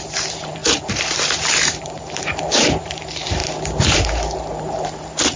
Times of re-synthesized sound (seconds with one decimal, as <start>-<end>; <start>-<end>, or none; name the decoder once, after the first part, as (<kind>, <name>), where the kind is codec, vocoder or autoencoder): 0.0-3.4 (vocoder, BigVGAN v2); 5.0-5.4